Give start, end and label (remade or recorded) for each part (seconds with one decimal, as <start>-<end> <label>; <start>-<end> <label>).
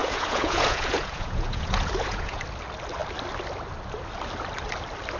0.0-2.4 remade; 2.4-5.2 recorded